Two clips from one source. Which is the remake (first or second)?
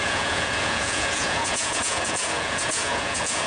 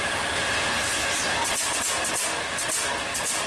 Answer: first